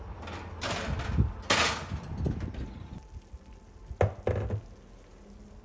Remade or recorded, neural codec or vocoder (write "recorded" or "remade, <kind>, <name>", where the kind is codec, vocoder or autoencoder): recorded